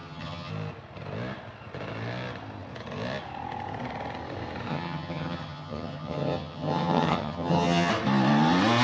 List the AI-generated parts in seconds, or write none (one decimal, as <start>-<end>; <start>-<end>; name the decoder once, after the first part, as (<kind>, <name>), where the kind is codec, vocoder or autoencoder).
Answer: 0.0-0.5 (vocoder, HiFi-GAN); 4.7-7.9